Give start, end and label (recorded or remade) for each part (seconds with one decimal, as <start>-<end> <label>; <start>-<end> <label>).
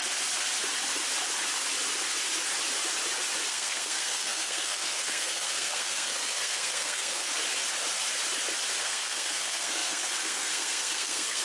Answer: 0.0-3.5 recorded; 3.5-7.2 remade; 7.2-8.8 recorded; 8.8-11.4 remade